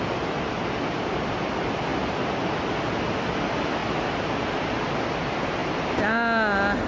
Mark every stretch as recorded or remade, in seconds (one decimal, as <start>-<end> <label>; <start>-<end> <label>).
0.0-6.9 recorded